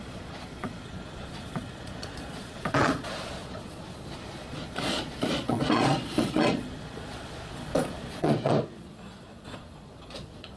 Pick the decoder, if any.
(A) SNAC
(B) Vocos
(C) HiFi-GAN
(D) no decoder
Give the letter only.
B